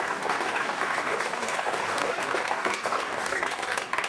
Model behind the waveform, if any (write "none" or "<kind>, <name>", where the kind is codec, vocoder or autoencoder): codec, DAC